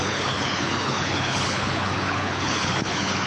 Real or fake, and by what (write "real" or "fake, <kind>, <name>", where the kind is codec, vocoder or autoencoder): fake, codec, HILCodec